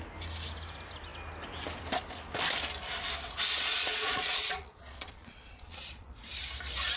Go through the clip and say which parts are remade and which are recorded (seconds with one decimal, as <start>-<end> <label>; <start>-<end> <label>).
0.0-3.7 recorded; 3.7-6.2 remade; 6.2-7.0 recorded